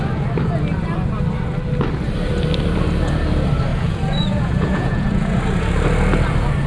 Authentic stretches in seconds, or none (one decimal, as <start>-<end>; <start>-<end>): 0.0-3.7; 5.4-6.7